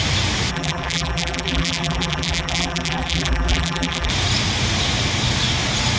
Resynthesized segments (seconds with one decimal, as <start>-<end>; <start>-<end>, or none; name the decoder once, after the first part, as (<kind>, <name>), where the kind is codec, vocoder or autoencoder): 0.5-4.1 (vocoder, BigVGAN v2)